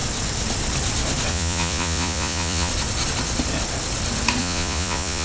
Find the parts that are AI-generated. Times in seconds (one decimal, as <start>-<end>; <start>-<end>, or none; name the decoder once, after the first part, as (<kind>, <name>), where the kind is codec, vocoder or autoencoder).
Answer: 1.3-2.7 (vocoder, Vocos); 4.4-5.2